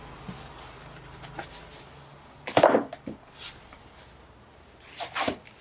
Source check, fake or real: fake